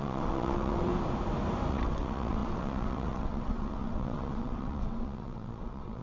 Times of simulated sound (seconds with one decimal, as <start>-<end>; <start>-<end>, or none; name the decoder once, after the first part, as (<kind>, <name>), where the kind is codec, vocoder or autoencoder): 0.0-0.9 (vocoder, WaveNeXt); 1.7-6.0

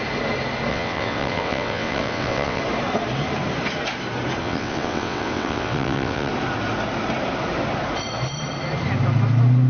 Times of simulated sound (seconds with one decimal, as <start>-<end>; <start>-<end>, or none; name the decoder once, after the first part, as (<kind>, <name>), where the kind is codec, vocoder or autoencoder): 0.7-2.6 (vocoder, WaveNeXt); 4.4-6.3

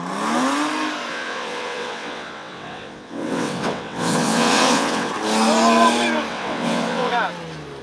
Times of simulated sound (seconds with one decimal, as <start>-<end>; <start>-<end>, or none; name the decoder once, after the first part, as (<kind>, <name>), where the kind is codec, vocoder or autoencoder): 1.1-5.1 (vocoder, WaveNeXt); 6.3-7.1

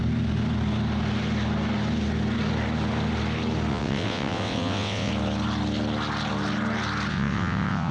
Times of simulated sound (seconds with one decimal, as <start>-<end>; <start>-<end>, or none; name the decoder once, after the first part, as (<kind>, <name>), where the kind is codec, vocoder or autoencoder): 3.7-5.1 (vocoder, WaveNeXt); 7.1-7.9

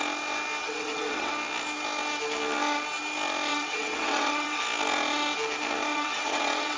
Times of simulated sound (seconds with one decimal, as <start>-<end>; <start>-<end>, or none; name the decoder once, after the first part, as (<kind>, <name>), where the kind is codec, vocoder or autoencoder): 0.6-1.3 (vocoder, WaveNeXt); 3.5-4.6; 5.9-6.8

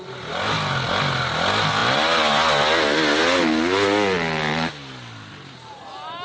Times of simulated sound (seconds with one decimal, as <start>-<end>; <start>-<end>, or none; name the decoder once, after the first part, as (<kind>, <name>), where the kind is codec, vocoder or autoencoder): none

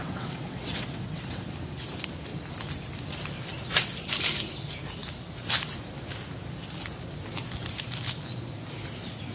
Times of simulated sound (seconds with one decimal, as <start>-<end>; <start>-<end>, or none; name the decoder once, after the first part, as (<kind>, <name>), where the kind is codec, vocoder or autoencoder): 0.0-1.5 (vocoder, WaveNeXt)

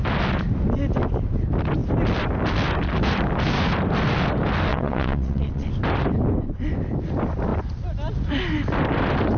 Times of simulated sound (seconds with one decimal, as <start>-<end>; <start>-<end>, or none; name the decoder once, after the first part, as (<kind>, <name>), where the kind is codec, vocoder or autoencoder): 4.7-5.7 (vocoder, WaveNeXt)